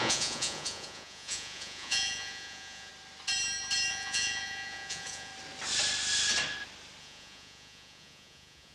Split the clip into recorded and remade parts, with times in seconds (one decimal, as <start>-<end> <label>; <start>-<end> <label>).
0.0-2.9 remade; 2.9-3.9 recorded; 3.9-5.3 remade; 5.3-7.0 recorded; 7.0-8.7 remade

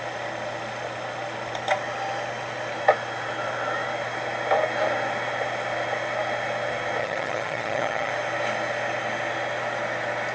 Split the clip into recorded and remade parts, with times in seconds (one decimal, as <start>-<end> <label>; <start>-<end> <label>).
0.0-7.0 recorded; 7.0-8.1 remade; 8.1-10.3 recorded

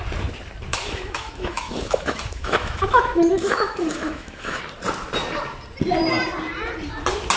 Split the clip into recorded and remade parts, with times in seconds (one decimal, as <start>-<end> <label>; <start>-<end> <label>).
0.0-0.7 recorded; 0.7-4.6 remade; 4.6-7.4 recorded

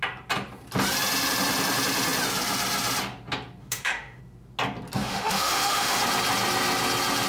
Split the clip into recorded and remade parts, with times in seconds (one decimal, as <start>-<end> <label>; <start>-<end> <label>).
0.0-3.6 recorded; 3.6-4.2 remade; 4.2-5.0 recorded; 5.0-6.0 remade; 6.0-7.3 recorded

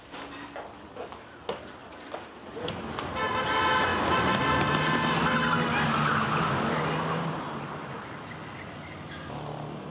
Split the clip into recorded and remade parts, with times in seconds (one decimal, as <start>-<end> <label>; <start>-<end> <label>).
0.0-9.9 recorded

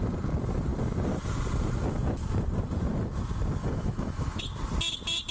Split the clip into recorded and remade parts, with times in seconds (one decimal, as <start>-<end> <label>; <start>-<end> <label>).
0.0-3.6 recorded; 3.6-4.4 remade; 4.4-5.3 recorded